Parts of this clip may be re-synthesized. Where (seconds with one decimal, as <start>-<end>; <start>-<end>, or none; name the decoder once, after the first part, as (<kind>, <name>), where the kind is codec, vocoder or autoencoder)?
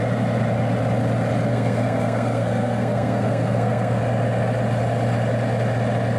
1.5-4.0 (codec, SNAC)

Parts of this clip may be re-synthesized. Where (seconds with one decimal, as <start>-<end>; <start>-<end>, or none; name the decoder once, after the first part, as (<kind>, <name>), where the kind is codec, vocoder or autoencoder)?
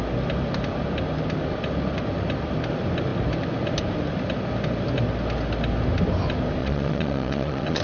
6.6-7.8 (vocoder, Vocos)